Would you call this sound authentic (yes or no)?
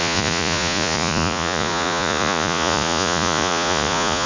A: no